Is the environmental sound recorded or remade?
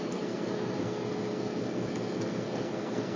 remade